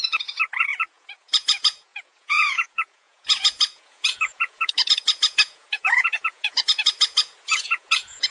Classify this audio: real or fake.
fake